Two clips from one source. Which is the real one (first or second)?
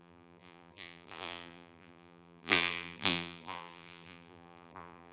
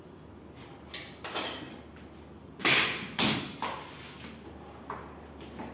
second